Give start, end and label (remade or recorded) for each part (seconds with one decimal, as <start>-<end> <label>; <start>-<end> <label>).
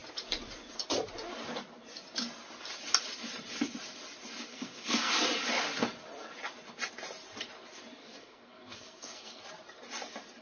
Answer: 0.0-4.5 recorded; 4.5-5.1 remade; 5.1-8.0 recorded; 8.0-9.4 remade; 9.4-10.4 recorded